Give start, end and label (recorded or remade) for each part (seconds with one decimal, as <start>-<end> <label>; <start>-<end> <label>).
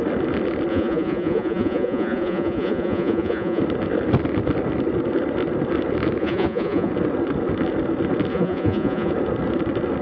0.0-0.7 recorded; 0.7-3.6 remade; 3.6-6.2 recorded; 6.2-6.9 remade; 6.9-8.3 recorded; 8.3-9.1 remade; 9.1-10.0 recorded